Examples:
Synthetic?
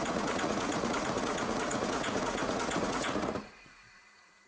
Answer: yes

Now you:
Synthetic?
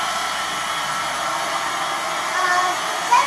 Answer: no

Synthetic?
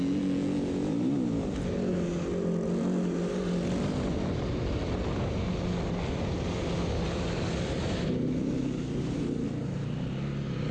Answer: no